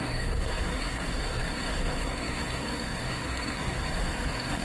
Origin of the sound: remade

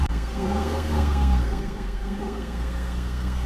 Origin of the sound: remade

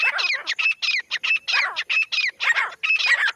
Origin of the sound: recorded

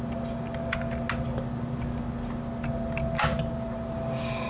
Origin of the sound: recorded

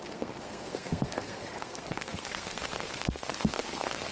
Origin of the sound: remade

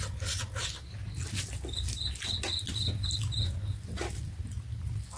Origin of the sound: recorded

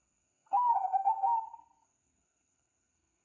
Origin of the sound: remade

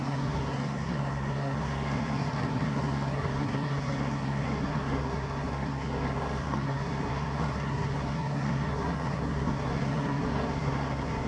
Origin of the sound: remade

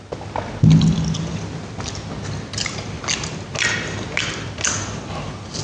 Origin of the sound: recorded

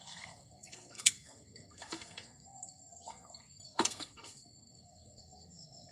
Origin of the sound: remade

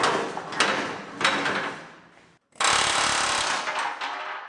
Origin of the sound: recorded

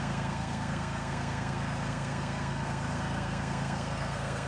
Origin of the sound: remade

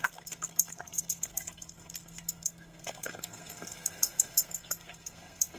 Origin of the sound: remade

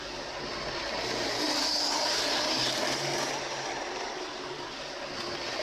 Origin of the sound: recorded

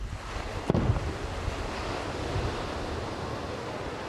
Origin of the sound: recorded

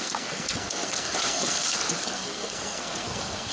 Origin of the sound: remade